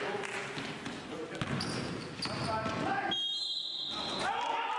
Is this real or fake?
real